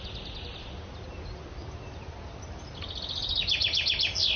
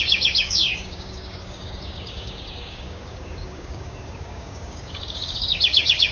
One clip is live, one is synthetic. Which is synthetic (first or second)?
second